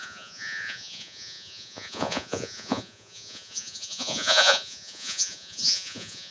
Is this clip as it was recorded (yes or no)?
no